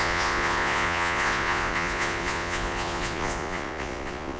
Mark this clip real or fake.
fake